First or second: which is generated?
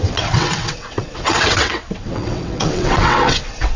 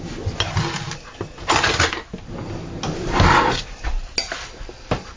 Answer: first